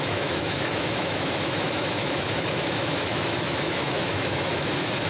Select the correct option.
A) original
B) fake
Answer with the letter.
B